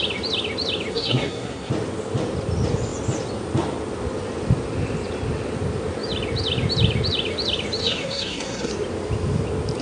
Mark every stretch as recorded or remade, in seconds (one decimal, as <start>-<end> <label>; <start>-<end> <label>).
0.0-0.9 recorded; 0.9-1.7 remade; 1.7-7.8 recorded; 7.8-8.7 remade; 8.7-9.8 recorded